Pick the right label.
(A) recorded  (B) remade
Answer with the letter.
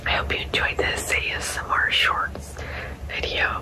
A